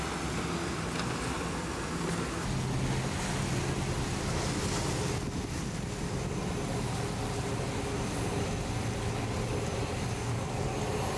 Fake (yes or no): no